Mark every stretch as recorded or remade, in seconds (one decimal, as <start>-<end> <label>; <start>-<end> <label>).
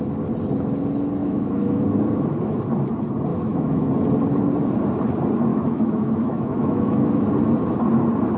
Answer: 0.0-1.2 recorded; 1.2-1.8 remade; 1.8-3.3 recorded; 3.3-3.9 remade; 3.9-5.5 recorded; 5.5-7.3 remade; 7.3-8.4 recorded